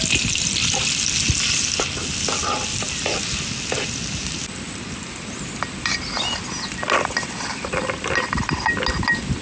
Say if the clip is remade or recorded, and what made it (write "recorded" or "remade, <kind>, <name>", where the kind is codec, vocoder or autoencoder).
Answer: recorded